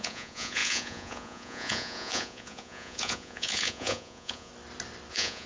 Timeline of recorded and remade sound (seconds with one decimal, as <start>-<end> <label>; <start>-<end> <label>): 0.0-4.5 remade; 4.5-5.1 recorded; 5.1-5.5 remade